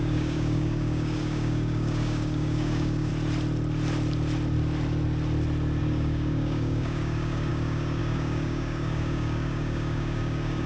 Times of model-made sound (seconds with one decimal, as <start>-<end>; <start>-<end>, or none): 0.0-3.1; 5.8-10.7